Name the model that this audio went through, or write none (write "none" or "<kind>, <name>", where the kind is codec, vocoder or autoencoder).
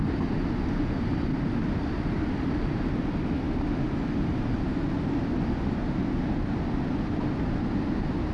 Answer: none